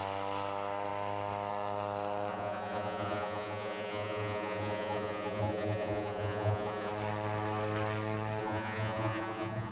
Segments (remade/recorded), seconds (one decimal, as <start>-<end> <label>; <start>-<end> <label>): 0.0-2.3 recorded; 2.3-6.9 remade; 6.9-8.4 recorded; 8.4-9.7 remade